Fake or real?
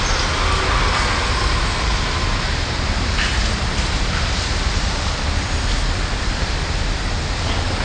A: real